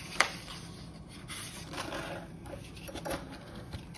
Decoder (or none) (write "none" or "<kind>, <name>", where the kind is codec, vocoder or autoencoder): none